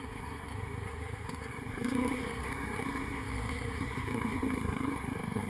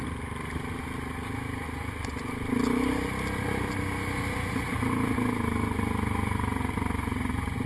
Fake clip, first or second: first